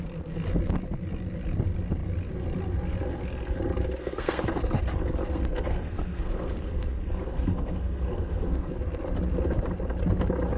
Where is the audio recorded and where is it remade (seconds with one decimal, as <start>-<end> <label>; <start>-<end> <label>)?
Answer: 0.0-4.0 recorded; 4.0-4.6 remade; 4.6-5.3 recorded; 5.3-8.7 remade; 8.7-10.6 recorded